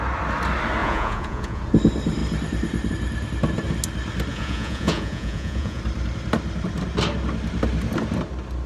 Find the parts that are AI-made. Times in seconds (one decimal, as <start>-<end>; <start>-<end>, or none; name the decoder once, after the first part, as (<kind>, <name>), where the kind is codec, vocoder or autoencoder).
0.8-1.6 (vocoder, Vocos); 4.3-5.8